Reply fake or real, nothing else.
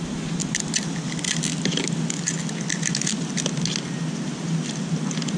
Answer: real